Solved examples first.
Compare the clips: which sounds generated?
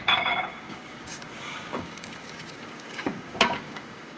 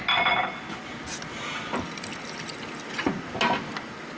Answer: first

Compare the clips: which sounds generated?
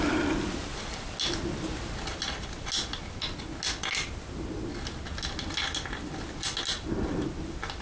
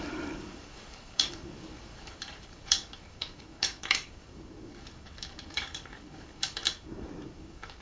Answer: second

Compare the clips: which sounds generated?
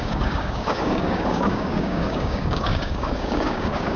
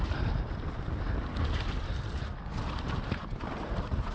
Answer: first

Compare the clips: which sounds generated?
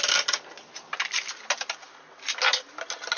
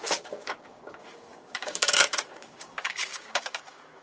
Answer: second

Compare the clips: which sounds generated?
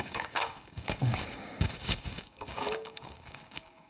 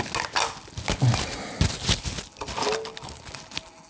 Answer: first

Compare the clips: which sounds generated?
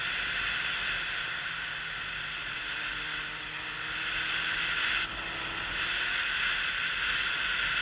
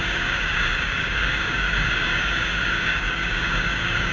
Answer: second